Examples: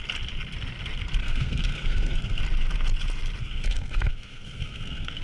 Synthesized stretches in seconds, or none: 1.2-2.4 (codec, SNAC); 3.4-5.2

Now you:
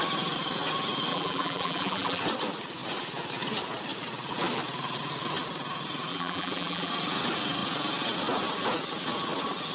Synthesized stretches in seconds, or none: 1.1-2.2 (vocoder, BigVGAN v2); 6.1-6.9

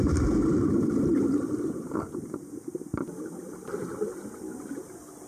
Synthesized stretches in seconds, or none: none

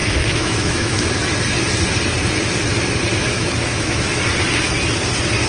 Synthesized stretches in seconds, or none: 0.0-1.1 (autoencoder, DAC-VAE); 3.2-4.2